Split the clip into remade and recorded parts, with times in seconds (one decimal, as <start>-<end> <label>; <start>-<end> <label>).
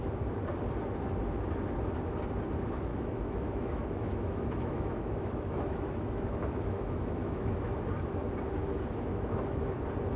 0.0-2.9 recorded; 2.9-7.8 remade; 7.8-9.1 recorded; 9.1-9.7 remade; 9.7-10.2 recorded